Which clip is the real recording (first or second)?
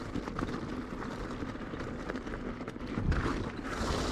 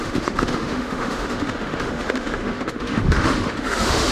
first